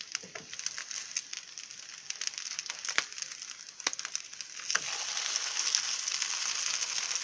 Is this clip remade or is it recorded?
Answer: recorded